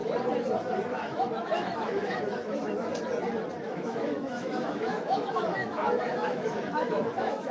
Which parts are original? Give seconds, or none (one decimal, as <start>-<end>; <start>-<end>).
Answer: 0.0-0.9; 2.9-3.6